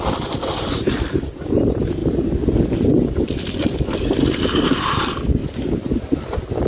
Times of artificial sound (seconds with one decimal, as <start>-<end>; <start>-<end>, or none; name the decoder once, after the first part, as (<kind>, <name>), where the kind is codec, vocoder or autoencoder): 0.0-2.0 (vocoder, BigVGAN v2); 2.9-5.4; 6.2-6.7